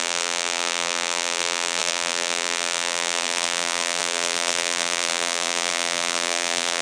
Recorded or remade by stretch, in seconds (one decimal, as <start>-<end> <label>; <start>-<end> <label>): 0.0-6.8 remade